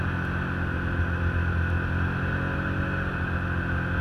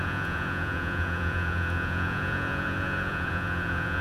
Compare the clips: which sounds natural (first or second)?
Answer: first